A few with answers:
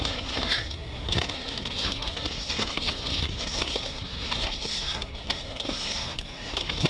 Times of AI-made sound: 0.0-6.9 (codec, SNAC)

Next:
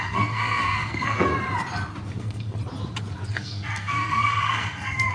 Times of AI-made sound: 0.0-1.3 (codec, SNAC); 2.2-2.6; 3.3-5.1

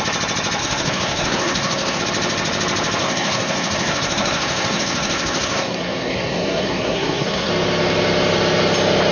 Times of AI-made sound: 0.6-2.0 (codec, SNAC); 3.0-7.5

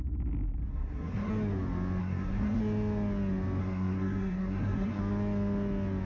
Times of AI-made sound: 0.7-1.3 (codec, SNAC); 2.0-2.6; 3.6-5.0

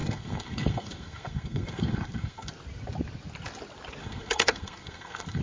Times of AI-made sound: 0.0-2.5 (codec, SNAC); 4.0-5.4

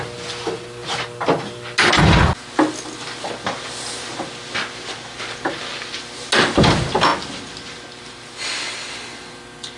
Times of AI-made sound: none

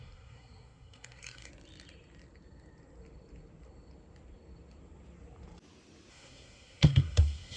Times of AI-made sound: 0.0-1.5 (codec, SNAC); 6.1-7.6

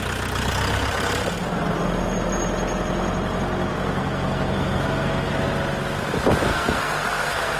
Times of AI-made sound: 3.7-5.3 (codec, SNAC); 6.5-7.6